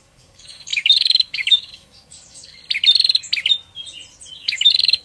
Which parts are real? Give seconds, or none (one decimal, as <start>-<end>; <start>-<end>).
2.6-4.3